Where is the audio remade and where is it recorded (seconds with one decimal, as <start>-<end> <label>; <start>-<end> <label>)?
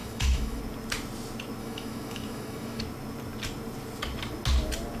0.0-0.6 remade; 0.6-1.6 recorded; 1.6-2.8 remade; 2.8-5.0 recorded